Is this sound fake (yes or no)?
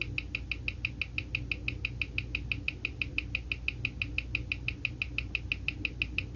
no